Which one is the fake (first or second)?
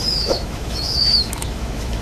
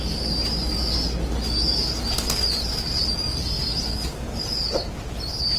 first